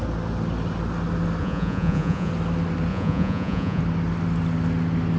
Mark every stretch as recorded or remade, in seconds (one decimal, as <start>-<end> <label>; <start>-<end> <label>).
0.0-1.4 recorded; 1.4-2.3 remade; 2.3-2.9 recorded; 2.9-3.8 remade; 3.8-5.2 recorded